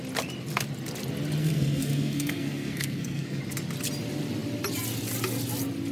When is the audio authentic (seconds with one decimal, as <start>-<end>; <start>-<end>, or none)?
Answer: 0.0-1.4; 3.4-5.9